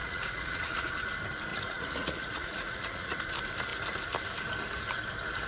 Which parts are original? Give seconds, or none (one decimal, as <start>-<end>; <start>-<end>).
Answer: 0.9-1.5; 3.2-5.5